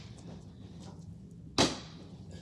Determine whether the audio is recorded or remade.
recorded